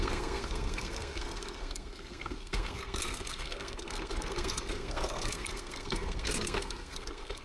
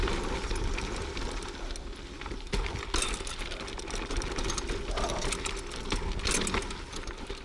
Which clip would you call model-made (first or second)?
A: first